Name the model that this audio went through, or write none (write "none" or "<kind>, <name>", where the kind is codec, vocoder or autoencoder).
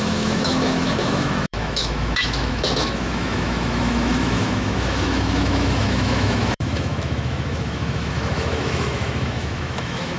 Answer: autoencoder, DAC-VAE